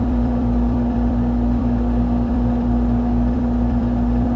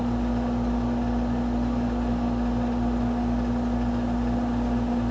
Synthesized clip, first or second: first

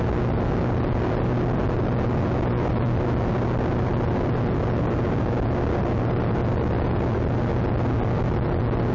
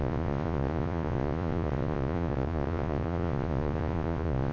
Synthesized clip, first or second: second